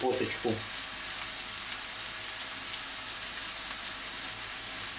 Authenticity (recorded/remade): recorded